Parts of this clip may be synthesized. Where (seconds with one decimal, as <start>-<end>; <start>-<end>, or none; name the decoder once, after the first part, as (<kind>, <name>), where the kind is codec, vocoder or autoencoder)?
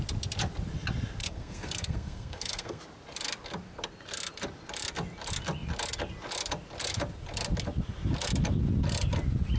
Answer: 1.2-2.8 (codec, SNAC)